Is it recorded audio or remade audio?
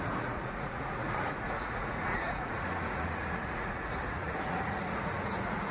remade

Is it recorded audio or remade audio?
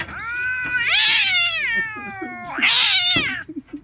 recorded